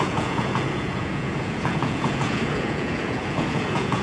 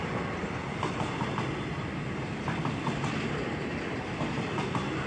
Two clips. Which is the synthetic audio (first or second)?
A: first